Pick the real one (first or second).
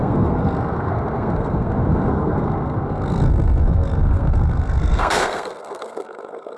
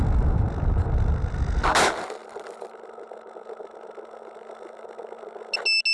second